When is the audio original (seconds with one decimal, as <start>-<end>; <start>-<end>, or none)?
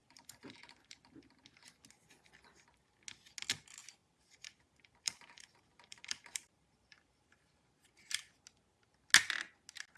0.7-4.0; 8.4-10.0